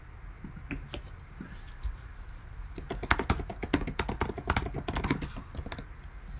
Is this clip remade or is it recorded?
recorded